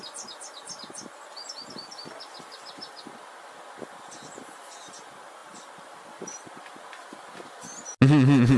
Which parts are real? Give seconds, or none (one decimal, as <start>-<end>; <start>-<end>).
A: 0.0-8.6